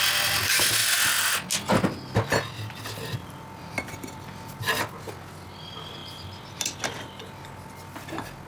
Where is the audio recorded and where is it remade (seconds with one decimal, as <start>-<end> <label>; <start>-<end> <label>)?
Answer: 0.0-3.2 recorded; 3.2-4.7 remade; 4.7-8.5 recorded